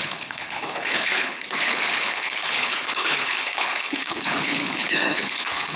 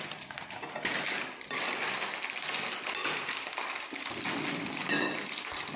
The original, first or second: second